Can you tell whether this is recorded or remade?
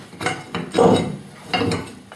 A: recorded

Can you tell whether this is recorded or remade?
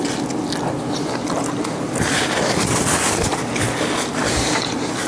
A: recorded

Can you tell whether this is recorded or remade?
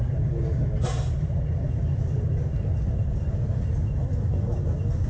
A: recorded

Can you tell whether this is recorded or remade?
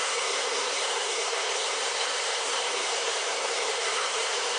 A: remade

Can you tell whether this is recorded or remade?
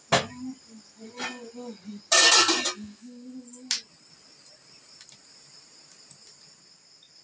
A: recorded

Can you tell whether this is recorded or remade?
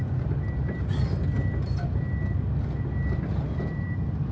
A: recorded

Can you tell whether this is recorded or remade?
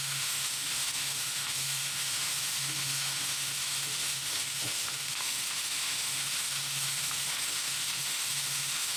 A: remade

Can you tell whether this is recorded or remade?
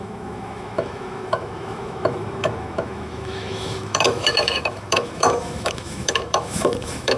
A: remade